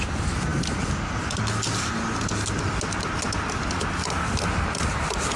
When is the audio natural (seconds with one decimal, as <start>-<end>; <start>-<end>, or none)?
0.0-5.4

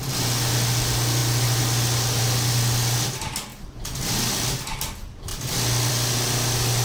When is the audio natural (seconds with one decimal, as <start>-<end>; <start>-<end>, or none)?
0.0-6.8

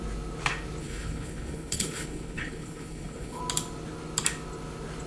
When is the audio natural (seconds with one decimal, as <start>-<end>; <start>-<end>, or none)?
0.0-0.8; 3.4-5.1

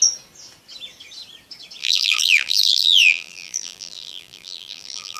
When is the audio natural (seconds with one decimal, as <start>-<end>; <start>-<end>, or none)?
0.0-1.8

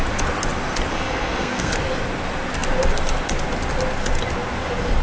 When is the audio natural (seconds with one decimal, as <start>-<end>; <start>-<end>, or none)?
0.0-0.9; 1.7-5.0

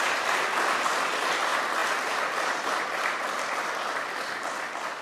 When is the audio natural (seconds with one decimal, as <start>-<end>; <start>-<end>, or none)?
0.0-5.0